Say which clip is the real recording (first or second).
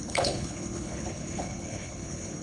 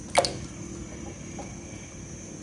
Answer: second